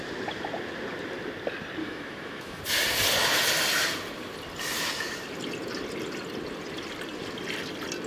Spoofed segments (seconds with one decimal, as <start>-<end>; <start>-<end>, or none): 1.8-2.6